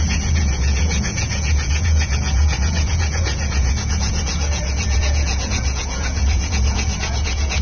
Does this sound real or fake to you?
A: fake